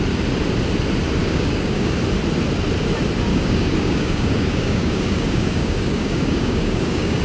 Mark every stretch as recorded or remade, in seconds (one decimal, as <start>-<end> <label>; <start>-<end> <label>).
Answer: 0.0-1.2 recorded; 1.2-1.9 remade; 1.9-3.3 recorded; 3.3-7.2 remade